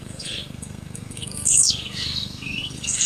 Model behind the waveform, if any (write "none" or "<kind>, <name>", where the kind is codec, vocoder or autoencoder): codec, SNAC